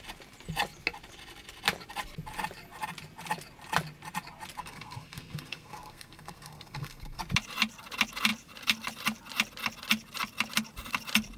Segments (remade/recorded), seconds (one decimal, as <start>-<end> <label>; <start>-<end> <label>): 0.0-4.6 recorded; 4.6-7.2 remade; 7.2-11.4 recorded